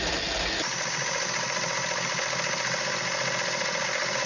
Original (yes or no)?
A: yes